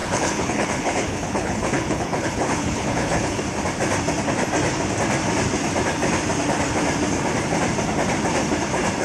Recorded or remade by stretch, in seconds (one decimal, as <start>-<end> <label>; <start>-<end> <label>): 0.0-3.4 remade; 3.4-9.0 recorded